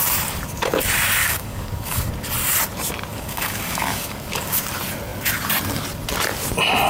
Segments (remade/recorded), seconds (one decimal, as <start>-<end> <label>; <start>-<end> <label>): 0.0-1.2 recorded; 1.2-2.1 remade; 2.1-3.1 recorded; 3.1-4.6 remade; 4.6-6.9 recorded